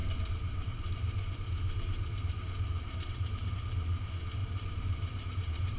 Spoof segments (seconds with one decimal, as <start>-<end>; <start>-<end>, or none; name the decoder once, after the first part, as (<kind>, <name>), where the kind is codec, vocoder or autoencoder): 0.0-3.5 (vocoder, BigVGAN v2); 4.4-5.8